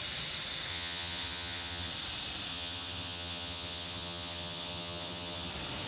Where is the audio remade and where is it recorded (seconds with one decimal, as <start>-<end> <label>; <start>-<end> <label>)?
0.0-0.7 recorded; 0.7-1.9 remade; 1.9-2.5 recorded; 2.5-5.5 remade; 5.5-5.9 recorded